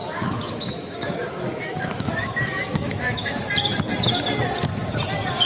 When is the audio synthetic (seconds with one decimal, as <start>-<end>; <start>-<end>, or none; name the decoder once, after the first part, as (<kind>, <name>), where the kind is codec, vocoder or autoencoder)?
0.0-3.3 (autoencoder, DAC-VAE)